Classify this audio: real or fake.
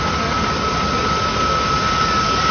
real